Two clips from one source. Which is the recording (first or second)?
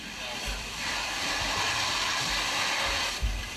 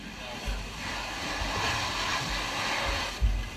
second